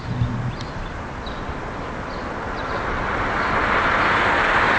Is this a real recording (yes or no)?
yes